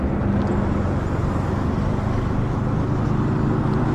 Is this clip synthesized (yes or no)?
no